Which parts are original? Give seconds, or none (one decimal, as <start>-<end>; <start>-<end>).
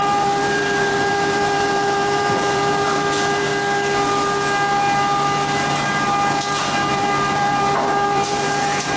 3.5-6.9